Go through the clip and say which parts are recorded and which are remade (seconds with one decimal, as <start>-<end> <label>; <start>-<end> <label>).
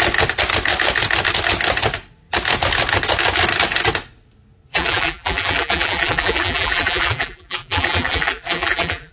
0.0-4.7 recorded; 4.7-9.1 remade